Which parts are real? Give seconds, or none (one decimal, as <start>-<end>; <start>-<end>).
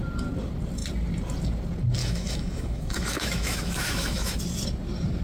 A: 0.0-2.0; 4.4-5.2